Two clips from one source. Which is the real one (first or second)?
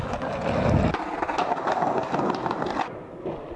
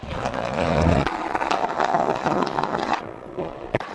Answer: first